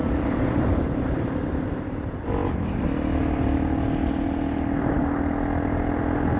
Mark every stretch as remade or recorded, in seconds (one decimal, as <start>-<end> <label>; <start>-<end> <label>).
0.0-2.4 remade; 2.4-6.4 recorded